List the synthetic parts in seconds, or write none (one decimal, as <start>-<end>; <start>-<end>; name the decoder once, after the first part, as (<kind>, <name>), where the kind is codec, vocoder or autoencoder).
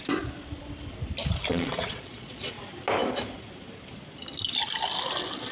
1.5-2.5 (vocoder, Vocos)